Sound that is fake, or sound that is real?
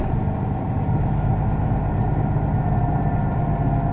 real